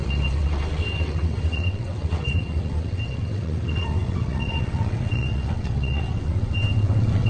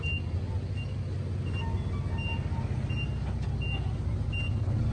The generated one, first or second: first